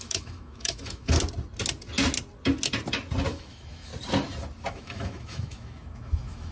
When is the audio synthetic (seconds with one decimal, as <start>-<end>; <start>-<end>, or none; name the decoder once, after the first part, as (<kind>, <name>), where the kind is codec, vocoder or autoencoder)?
0.0-1.1 (autoencoder, DAC-VAE); 3.3-3.9; 4.7-6.5